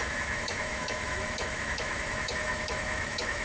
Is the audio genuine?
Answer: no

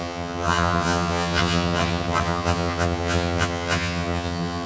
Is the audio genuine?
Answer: no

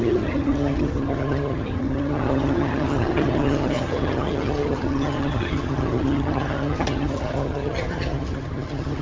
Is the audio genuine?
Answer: no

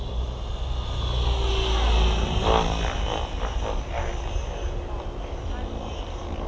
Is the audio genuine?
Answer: yes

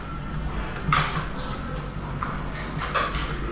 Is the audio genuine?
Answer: yes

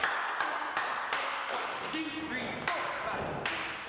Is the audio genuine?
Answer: yes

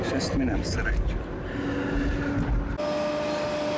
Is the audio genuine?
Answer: yes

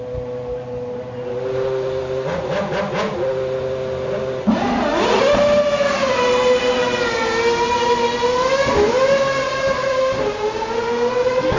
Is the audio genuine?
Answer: yes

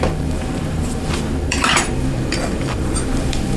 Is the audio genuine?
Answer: no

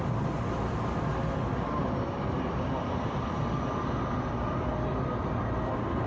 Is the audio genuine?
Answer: yes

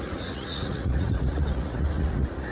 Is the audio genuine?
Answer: no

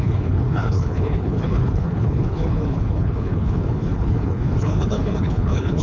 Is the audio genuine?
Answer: no